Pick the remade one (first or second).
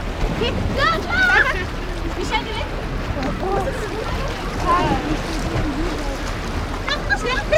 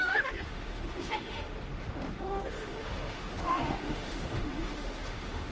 second